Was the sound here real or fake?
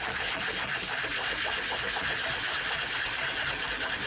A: real